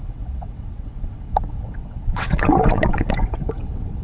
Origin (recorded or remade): remade